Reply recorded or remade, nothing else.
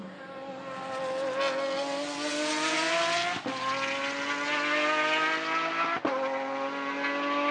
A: recorded